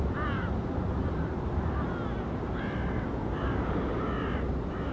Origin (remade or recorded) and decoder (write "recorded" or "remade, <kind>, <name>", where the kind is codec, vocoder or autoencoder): recorded